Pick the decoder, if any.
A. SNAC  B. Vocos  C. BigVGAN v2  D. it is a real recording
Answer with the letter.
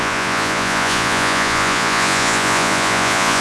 B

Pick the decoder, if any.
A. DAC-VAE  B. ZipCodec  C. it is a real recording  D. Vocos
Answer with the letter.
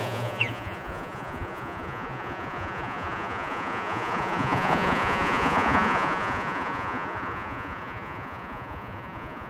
D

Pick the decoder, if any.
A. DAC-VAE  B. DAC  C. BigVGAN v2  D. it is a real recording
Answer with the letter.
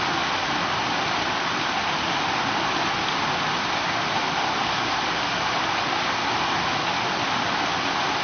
D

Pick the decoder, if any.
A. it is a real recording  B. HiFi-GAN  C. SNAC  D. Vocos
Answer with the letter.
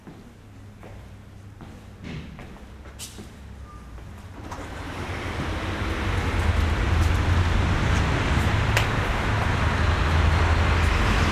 A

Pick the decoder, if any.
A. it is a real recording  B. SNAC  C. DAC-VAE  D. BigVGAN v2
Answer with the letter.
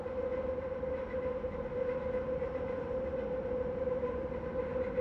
A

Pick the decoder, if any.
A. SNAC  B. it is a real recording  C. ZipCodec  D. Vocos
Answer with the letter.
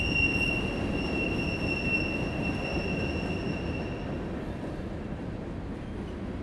B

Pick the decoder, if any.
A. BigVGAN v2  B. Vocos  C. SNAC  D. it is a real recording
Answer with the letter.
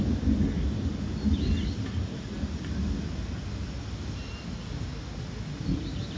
D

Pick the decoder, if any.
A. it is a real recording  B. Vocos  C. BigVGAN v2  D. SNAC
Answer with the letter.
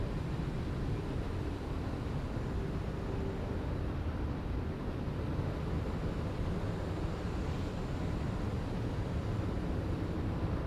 A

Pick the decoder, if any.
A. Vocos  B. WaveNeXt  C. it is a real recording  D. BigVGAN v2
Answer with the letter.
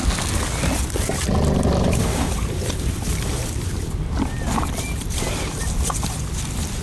C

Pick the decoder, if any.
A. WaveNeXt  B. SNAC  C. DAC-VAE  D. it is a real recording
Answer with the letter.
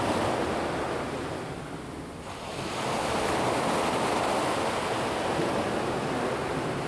D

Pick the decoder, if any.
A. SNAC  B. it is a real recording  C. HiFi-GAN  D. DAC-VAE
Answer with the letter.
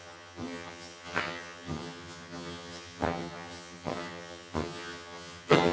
C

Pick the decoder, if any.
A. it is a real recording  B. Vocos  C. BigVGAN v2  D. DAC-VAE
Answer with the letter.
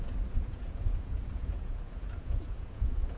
B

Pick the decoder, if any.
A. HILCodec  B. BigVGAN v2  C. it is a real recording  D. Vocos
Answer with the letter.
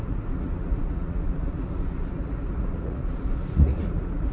D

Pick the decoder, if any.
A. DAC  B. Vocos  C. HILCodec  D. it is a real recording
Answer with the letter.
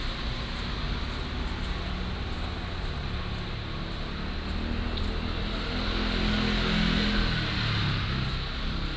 D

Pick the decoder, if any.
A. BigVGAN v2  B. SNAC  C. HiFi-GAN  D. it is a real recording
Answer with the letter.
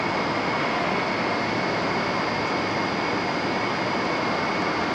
D